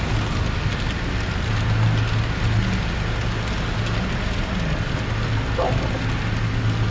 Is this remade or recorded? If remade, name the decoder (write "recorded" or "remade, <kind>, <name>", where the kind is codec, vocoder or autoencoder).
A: recorded